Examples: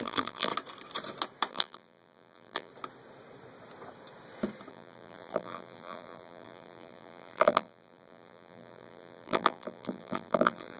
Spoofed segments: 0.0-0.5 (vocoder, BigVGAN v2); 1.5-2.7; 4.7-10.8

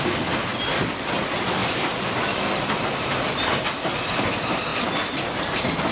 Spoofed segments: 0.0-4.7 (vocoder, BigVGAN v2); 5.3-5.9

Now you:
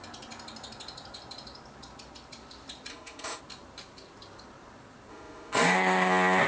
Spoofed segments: 2.9-3.4 (autoencoder, DAC-VAE); 5.1-6.1

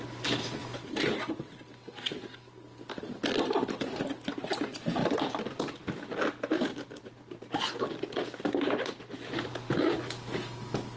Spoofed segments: 0.6-1.2 (vocoder, BigVGAN v2); 5.0-7.6

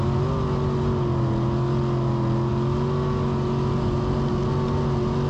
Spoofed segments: none